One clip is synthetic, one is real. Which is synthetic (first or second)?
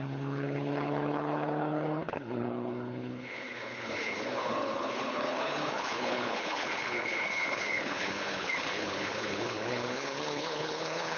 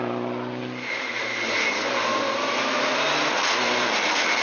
first